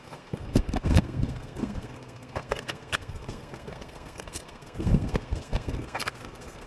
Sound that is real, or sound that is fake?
fake